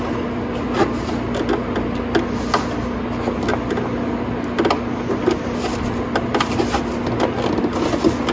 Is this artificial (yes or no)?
no